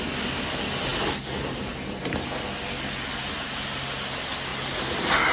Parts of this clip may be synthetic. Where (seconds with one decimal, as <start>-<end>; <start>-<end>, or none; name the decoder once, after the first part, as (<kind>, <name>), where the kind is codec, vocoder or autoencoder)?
none